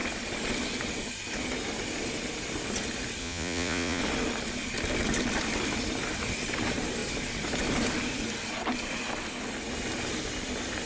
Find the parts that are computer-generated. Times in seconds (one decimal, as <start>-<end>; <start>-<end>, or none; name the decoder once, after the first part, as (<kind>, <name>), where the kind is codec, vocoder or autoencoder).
3.2-4.0 (vocoder, Vocos)